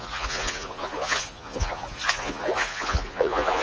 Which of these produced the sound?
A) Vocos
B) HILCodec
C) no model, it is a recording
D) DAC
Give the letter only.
A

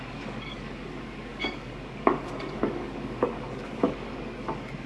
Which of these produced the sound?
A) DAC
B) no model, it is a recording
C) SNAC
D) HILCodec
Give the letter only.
A